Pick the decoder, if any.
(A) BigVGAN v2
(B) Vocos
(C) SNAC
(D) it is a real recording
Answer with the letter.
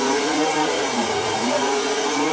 B